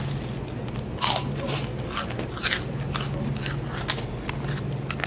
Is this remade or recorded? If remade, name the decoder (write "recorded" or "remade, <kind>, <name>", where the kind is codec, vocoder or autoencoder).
recorded